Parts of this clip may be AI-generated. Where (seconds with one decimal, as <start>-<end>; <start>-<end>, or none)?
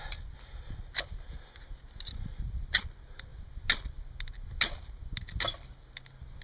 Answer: none